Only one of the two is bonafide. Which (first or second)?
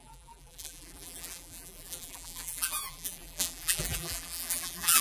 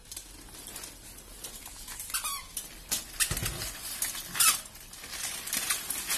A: second